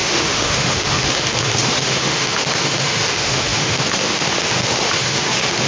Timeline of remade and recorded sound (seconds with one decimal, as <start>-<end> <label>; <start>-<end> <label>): 0.0-5.7 remade